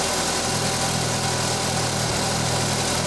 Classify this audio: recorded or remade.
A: recorded